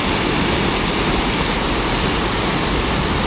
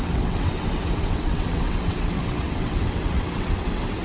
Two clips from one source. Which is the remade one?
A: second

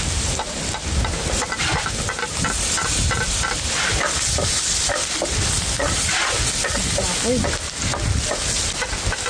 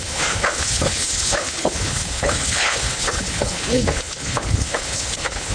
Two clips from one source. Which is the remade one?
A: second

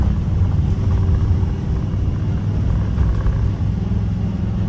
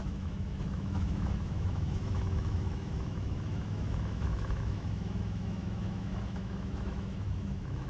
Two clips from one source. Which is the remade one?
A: second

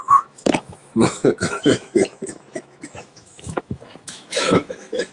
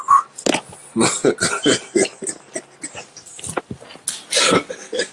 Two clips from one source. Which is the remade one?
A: first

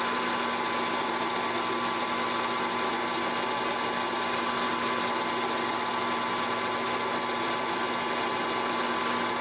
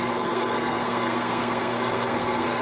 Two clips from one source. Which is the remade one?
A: second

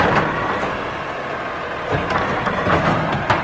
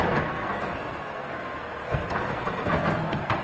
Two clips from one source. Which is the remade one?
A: second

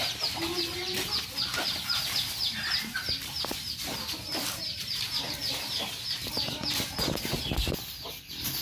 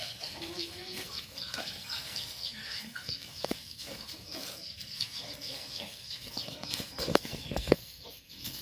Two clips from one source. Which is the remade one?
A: second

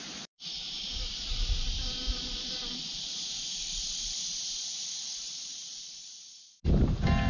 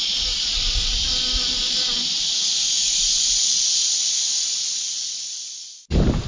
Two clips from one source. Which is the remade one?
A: first